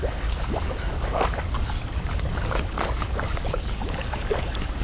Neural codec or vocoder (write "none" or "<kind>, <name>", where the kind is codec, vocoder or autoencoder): codec, DAC